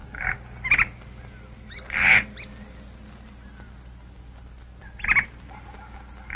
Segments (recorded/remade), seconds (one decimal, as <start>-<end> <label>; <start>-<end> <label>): 0.0-6.4 recorded